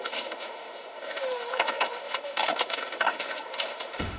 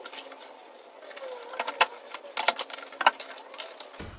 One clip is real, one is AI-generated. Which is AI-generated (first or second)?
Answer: first